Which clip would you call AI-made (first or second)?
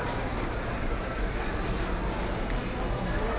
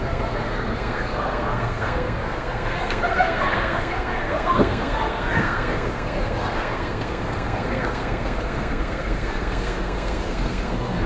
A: second